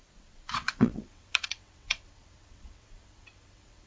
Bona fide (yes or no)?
no